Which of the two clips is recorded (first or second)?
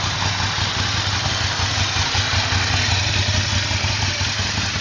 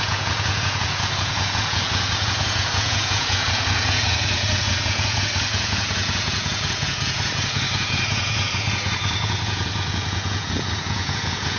first